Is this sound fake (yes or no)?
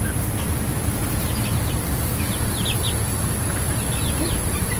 yes